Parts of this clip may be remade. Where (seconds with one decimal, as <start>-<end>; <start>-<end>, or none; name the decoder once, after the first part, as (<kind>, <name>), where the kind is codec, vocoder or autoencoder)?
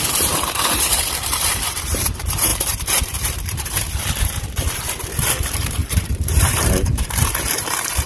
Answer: 0.0-8.1 (vocoder, BigVGAN v2)